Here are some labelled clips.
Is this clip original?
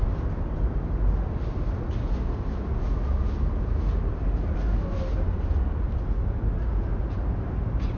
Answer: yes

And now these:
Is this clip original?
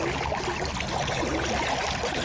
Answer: yes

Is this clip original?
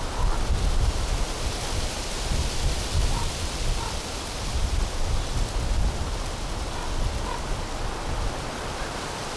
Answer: yes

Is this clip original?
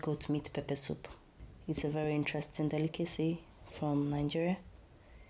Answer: yes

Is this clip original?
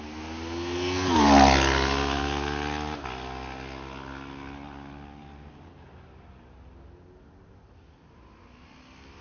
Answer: yes